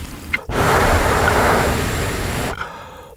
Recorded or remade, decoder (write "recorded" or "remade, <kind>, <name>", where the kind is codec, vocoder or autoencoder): remade, vocoder, BigVGAN v2